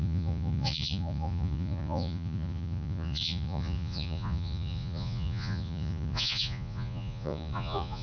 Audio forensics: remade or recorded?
remade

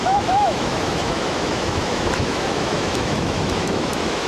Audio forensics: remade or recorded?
remade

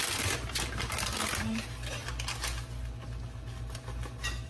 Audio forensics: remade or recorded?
recorded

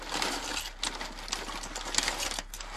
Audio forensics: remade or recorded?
recorded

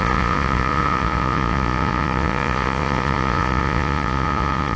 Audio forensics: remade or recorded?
remade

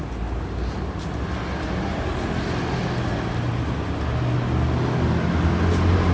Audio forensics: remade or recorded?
recorded